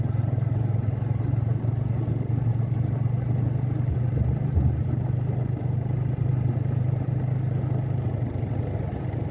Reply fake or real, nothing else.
real